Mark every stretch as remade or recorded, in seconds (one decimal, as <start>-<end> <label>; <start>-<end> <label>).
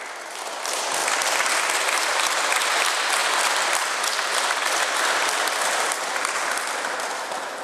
0.0-1.0 recorded; 1.0-1.6 remade; 1.6-3.2 recorded; 3.2-7.6 remade